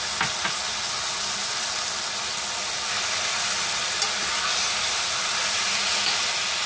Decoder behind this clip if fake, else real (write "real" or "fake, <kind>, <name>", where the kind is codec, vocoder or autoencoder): real